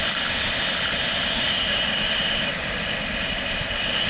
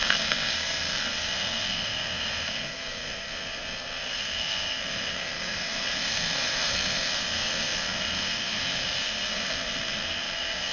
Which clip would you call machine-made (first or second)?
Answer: second